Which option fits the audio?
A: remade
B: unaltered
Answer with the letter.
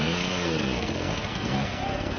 A